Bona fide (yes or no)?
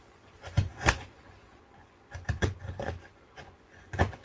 no